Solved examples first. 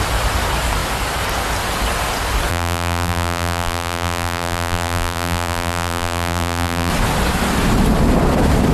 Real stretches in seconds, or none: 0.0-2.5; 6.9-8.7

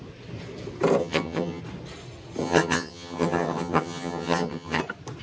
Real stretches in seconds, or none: 0.0-1.0; 1.6-2.4; 4.8-5.2

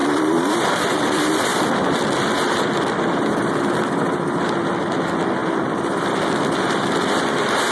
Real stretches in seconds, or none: 1.0-1.5; 3.7-5.4

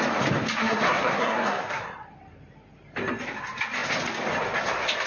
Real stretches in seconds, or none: 0.0-0.6; 1.8-5.1

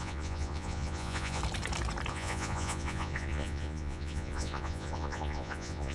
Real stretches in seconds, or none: 1.4-2.1

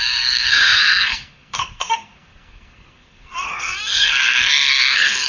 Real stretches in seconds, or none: none

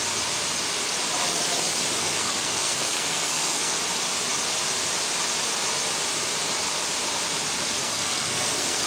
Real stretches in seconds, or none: 0.0-2.0; 3.8-7.8

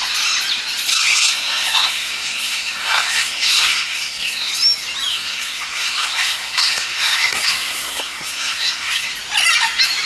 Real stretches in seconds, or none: 0.0-0.9; 4.5-5.1; 9.1-10.1